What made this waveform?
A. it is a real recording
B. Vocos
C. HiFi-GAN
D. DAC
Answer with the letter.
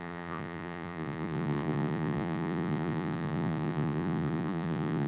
B